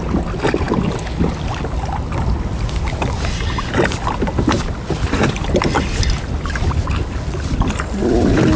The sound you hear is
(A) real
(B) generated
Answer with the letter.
A